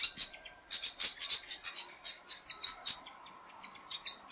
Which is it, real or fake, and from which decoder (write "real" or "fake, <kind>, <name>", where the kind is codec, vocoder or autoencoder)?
fake, vocoder, BigVGAN v2